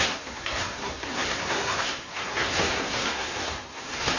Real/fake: fake